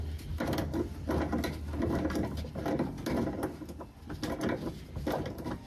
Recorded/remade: recorded